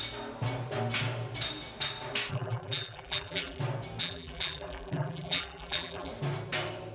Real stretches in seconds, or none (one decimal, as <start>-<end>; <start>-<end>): 0.0-2.3; 3.6-4.0; 6.1-6.9